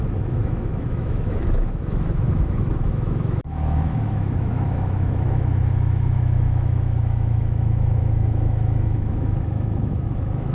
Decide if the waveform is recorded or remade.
remade